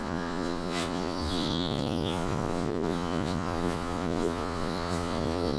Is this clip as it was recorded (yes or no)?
no